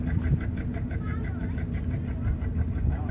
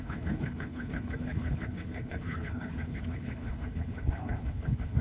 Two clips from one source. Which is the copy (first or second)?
second